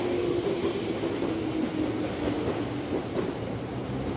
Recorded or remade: recorded